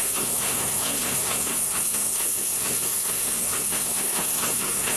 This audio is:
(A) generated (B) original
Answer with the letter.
A